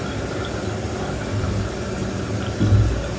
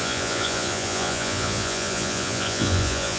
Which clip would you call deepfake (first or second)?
second